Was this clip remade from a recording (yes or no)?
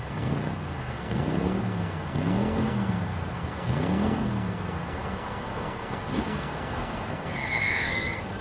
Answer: yes